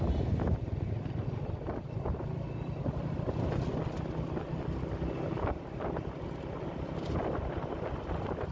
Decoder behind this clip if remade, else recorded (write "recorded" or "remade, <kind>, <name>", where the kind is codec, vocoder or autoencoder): recorded